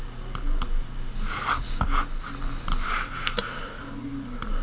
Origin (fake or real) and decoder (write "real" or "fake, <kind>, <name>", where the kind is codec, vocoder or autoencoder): real